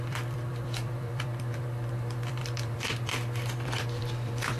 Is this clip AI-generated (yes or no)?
yes